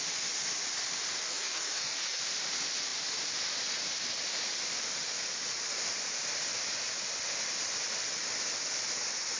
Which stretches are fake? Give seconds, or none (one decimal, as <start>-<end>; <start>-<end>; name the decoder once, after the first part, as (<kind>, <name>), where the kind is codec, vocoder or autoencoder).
1.2-2.2 (codec, DAC)